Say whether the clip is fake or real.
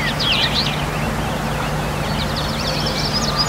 real